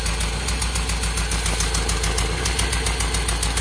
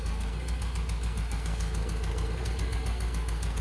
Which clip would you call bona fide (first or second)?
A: first